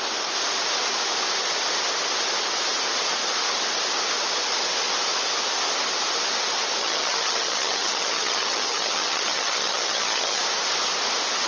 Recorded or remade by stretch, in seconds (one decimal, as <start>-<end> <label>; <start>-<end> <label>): 0.0-6.8 recorded; 6.8-10.4 remade; 10.4-11.5 recorded